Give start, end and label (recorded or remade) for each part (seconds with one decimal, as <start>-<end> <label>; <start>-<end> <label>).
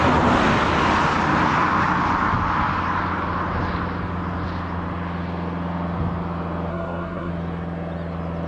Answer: 0.0-6.7 recorded; 6.7-7.3 remade; 7.3-8.5 recorded